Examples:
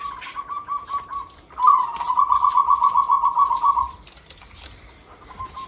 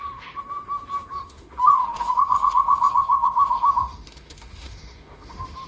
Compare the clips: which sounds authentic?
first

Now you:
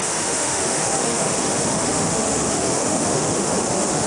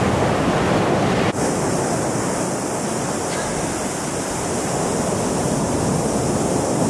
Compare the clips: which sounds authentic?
second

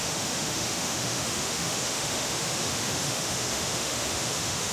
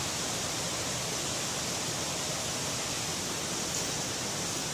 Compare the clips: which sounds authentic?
second